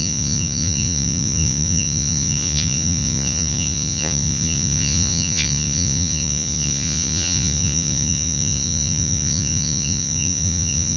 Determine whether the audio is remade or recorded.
remade